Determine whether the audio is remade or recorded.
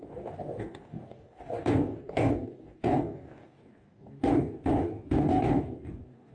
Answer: remade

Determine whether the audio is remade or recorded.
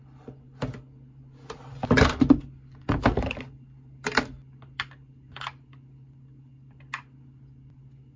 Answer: recorded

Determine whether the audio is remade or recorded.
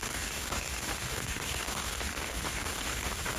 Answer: remade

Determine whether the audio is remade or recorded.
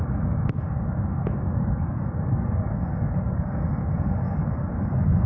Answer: remade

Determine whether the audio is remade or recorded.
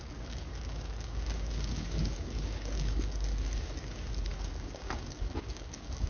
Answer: remade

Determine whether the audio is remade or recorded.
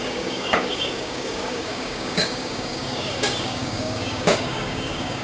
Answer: remade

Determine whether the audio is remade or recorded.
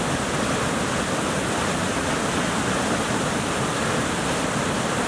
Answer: recorded